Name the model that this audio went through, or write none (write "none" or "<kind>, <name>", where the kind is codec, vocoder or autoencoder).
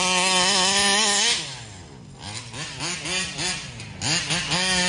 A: none